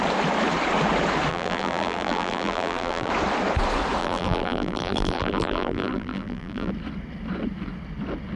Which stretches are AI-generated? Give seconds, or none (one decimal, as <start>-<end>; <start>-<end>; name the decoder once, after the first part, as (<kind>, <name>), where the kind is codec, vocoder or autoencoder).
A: 1.3-3.1 (vocoder, BigVGAN v2); 4.0-6.7